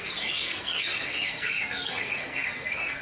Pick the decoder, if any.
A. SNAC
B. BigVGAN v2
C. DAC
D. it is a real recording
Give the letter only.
A